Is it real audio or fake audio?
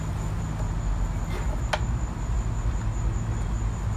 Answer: real